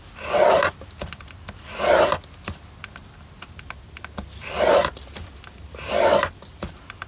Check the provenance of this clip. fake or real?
real